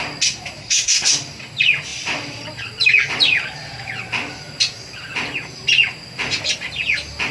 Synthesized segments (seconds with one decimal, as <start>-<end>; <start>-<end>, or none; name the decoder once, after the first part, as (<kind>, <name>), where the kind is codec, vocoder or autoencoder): 0.6-1.1 (codec, SNAC)